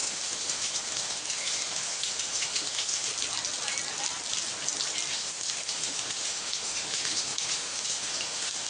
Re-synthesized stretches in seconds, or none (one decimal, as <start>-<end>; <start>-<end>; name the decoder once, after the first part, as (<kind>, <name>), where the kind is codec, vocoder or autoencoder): 0.0-3.1 (autoencoder, DAC-VAE); 5.1-8.7